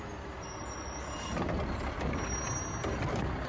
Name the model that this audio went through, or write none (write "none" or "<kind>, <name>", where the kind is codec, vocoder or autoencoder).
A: none